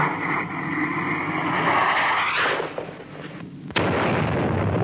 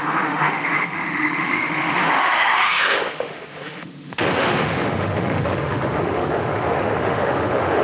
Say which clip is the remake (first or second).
second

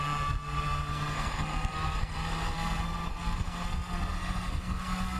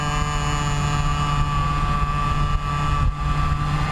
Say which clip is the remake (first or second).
first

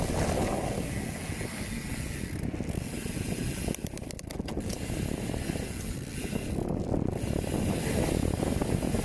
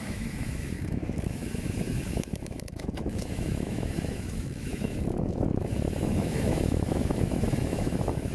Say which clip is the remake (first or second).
second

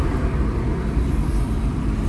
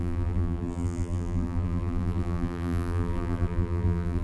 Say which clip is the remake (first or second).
second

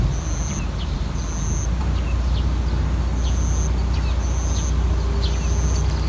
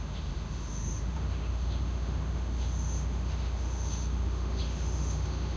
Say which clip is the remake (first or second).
second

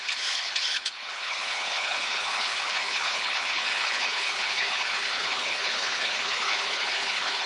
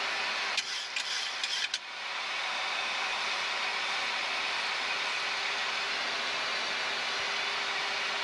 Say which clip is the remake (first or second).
first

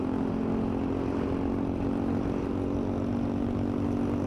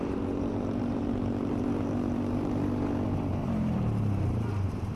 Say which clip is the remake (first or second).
second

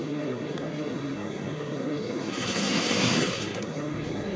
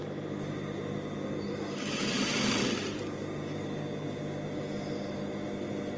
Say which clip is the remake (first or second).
first